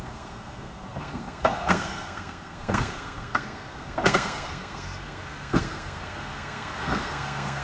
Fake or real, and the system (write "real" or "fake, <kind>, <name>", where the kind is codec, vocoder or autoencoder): fake, codec, SNAC